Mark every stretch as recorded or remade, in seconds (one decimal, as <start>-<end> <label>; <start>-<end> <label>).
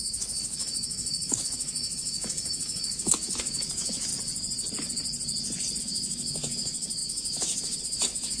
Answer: 0.0-4.1 remade; 4.1-5.8 recorded; 5.8-8.4 remade